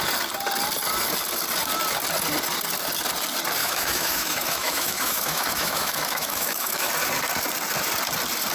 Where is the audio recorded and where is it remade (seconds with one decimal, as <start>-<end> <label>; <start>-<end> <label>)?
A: 0.0-3.6 recorded; 3.6-6.9 remade; 6.9-8.5 recorded